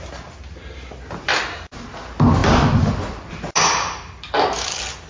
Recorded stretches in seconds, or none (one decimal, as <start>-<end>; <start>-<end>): 0.0-5.1